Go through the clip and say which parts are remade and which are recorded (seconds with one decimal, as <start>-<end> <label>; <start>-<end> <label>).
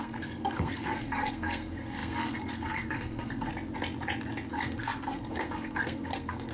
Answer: 0.0-3.5 remade; 3.5-4.5 recorded; 4.5-6.5 remade